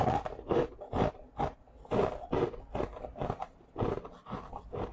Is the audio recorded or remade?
recorded